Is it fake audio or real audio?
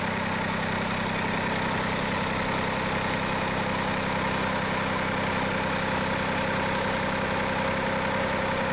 real